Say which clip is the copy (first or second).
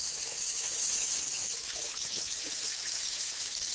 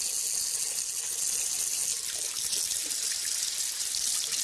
first